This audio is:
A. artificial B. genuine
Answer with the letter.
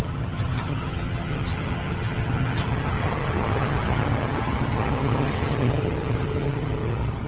A